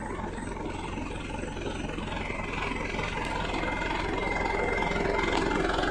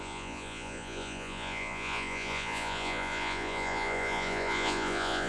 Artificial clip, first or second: second